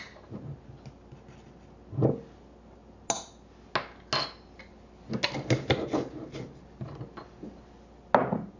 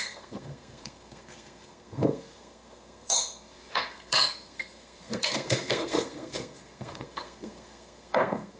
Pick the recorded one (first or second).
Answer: first